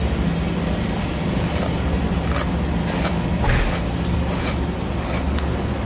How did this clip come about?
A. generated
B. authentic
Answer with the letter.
B